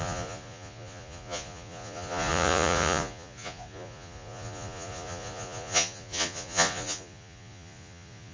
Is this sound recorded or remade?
remade